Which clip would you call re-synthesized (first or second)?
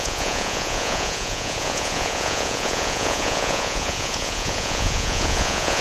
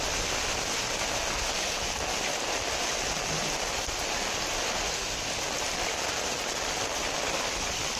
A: first